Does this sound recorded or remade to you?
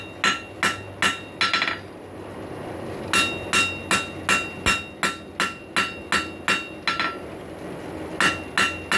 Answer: recorded